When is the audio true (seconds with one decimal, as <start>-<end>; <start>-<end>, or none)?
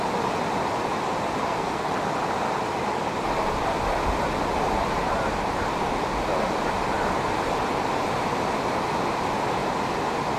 0.0-1.4; 1.9-10.4